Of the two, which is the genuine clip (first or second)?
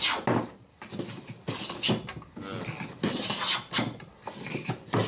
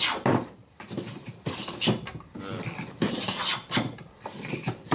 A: first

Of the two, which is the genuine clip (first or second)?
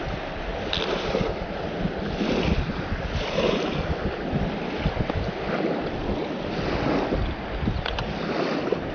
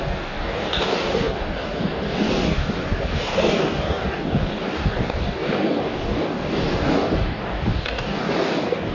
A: first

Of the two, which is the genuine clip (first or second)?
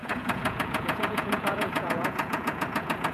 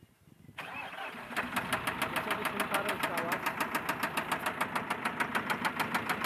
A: second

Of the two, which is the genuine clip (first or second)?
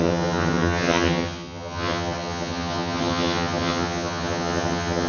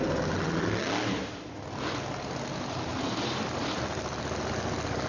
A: second